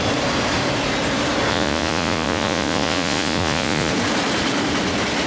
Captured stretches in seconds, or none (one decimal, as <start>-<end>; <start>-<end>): 0.0-1.5; 3.9-5.3